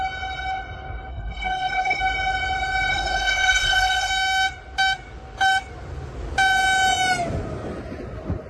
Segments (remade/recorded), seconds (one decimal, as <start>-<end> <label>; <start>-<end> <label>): 0.0-1.1 recorded; 1.1-2.0 remade; 2.0-2.9 recorded; 2.9-4.1 remade; 4.1-8.5 recorded